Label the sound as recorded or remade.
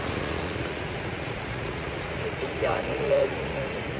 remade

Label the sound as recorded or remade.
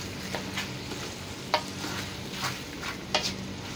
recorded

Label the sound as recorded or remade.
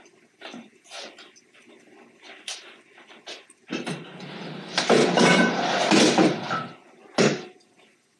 recorded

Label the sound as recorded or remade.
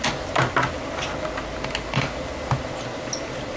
recorded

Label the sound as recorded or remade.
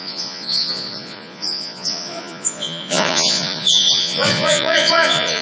remade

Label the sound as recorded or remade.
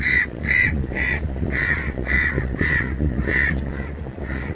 remade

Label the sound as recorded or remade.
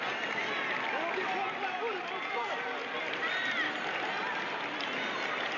recorded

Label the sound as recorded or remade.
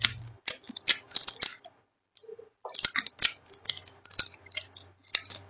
recorded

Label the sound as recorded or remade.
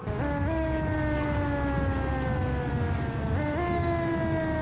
recorded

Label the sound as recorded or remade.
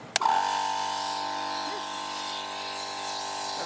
recorded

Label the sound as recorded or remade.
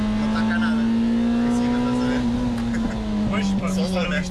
recorded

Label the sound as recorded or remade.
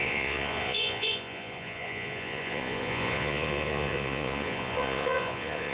remade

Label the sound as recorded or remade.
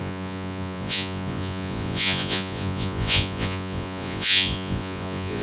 remade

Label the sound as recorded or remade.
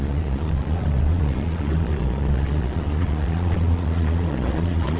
remade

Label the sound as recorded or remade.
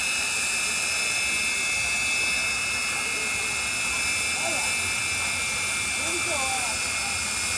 recorded